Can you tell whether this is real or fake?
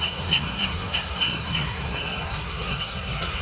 fake